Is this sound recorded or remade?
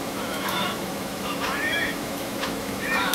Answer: remade